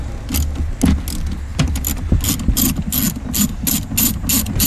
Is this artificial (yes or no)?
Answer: no